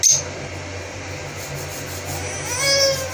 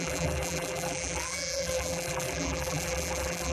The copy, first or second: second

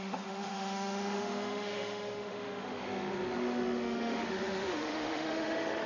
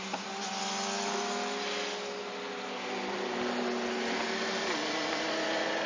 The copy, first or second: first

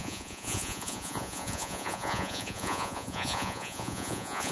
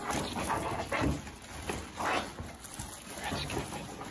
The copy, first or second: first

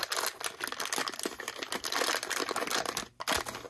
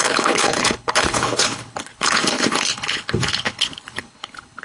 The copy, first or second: second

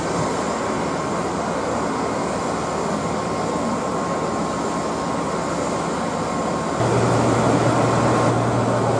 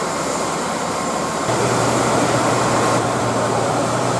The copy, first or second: second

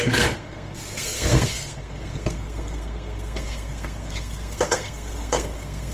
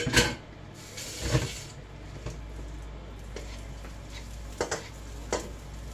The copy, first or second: first